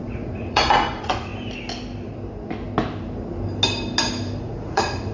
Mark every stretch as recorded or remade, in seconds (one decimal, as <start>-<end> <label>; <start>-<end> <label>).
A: 0.0-1.3 remade; 1.3-4.4 recorded; 4.4-5.1 remade

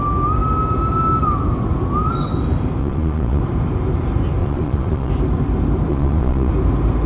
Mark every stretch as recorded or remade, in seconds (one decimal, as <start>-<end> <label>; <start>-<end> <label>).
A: 0.0-2.8 recorded; 2.8-3.4 remade; 3.4-4.4 recorded; 4.4-5.1 remade; 5.1-5.9 recorded; 5.9-6.5 remade; 6.5-7.1 recorded

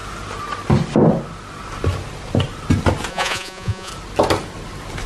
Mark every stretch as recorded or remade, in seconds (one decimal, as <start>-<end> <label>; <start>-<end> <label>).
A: 0.0-3.1 recorded; 3.1-3.9 remade; 3.9-5.1 recorded

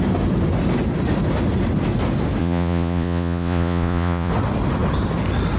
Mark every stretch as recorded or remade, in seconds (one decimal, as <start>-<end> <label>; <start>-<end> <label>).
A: 0.0-2.4 recorded; 2.4-4.3 remade; 4.3-5.6 recorded

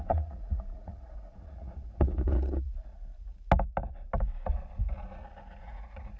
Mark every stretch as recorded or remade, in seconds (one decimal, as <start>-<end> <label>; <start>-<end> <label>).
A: 0.0-2.9 remade; 2.9-5.6 recorded; 5.6-6.2 remade

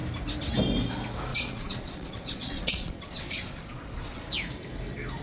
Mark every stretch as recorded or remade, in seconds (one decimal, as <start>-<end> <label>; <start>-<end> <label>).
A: 0.0-1.3 recorded; 1.3-4.2 remade; 4.2-5.2 recorded

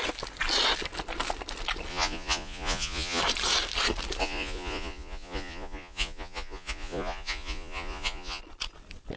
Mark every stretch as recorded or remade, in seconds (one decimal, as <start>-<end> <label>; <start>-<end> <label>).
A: 0.0-1.9 recorded; 1.9-3.2 remade; 3.2-4.2 recorded; 4.2-8.4 remade; 8.4-9.2 recorded